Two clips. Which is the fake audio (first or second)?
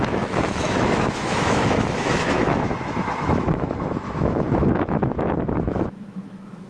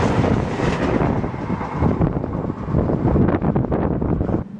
first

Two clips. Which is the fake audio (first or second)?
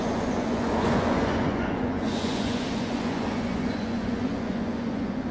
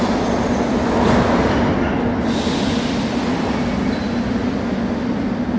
first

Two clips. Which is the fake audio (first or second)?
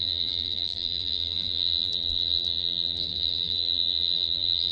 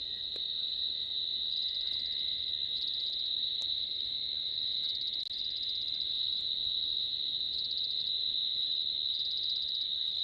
first